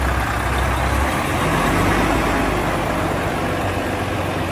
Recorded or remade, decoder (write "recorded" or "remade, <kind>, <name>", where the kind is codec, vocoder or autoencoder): recorded